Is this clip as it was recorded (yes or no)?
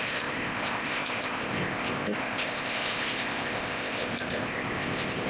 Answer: no